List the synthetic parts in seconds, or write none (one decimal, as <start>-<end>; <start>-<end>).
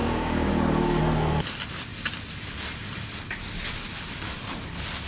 0.0-1.0